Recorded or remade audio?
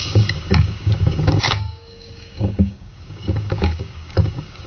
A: remade